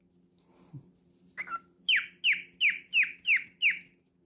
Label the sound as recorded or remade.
recorded